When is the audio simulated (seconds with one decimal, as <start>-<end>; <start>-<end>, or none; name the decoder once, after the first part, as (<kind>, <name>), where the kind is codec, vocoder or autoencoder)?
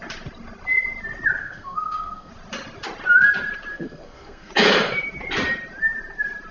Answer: 1.4-2.3 (codec, SNAC); 3.7-4.5